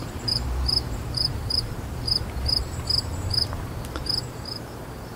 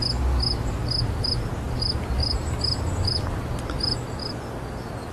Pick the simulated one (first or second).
first